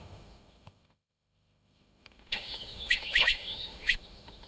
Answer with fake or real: fake